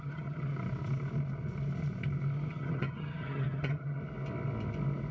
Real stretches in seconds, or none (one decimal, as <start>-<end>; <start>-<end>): 0.5-2.5; 4.0-5.1